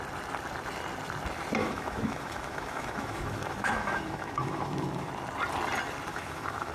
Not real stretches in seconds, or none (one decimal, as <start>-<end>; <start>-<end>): 1.6-5.1; 6.1-6.7